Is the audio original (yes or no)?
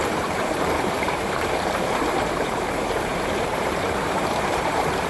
no